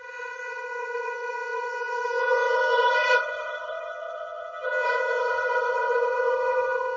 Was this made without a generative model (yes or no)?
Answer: no